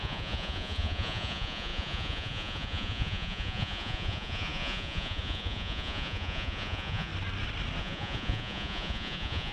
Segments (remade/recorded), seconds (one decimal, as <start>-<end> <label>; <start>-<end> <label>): 0.0-7.1 remade; 7.1-7.8 recorded; 7.8-9.5 remade